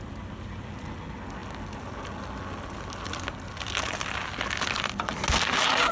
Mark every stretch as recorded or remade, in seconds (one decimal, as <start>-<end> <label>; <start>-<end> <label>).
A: 0.0-5.9 recorded